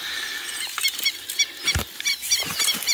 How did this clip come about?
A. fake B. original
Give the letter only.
B